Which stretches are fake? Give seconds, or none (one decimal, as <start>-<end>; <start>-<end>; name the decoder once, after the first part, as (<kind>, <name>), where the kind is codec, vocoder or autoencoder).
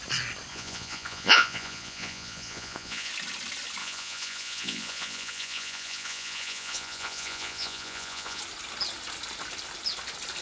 0.5-3.1 (vocoder, Vocos); 3.8-8.4